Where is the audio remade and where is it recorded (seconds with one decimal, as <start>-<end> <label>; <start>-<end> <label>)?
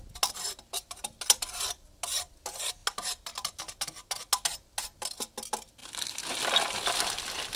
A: 0.0-7.6 recorded